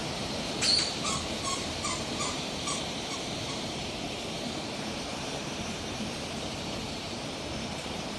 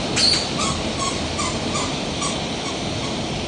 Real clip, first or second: second